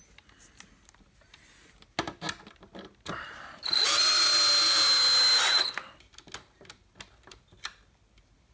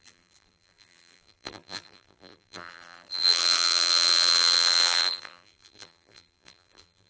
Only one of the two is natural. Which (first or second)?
first